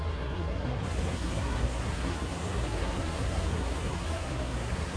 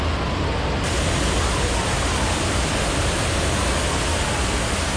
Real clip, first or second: second